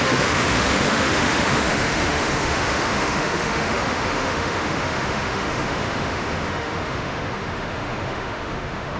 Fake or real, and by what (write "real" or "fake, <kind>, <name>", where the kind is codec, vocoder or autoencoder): fake, autoencoder, DAC-VAE